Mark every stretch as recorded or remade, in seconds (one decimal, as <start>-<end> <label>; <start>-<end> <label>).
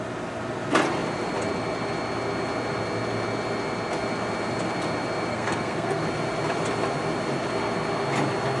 0.0-5.3 recorded; 5.3-6.0 remade; 6.0-8.6 recorded